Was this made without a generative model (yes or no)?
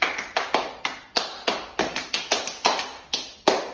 yes